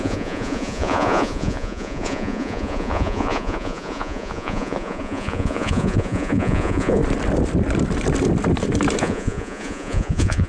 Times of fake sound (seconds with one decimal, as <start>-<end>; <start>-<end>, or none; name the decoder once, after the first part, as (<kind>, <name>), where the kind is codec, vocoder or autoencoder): 0.0-7.0 (vocoder, Vocos); 9.0-10.5